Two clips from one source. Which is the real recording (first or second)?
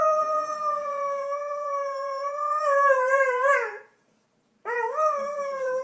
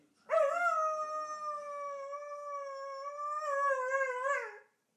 second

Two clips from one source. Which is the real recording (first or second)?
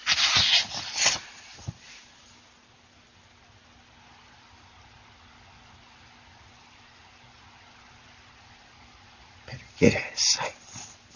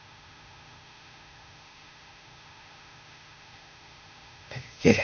first